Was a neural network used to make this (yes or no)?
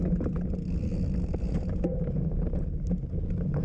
no